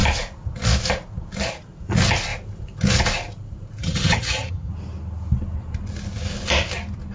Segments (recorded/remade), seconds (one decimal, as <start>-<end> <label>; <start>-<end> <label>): 0.0-3.8 recorded; 3.8-4.7 remade; 4.7-7.1 recorded